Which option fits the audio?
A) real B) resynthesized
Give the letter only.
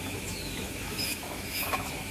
B